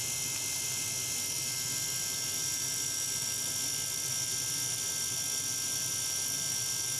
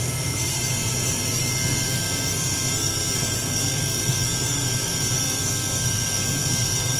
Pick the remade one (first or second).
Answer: second